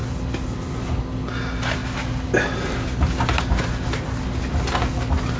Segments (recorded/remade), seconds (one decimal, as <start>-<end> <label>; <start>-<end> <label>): 0.0-5.4 recorded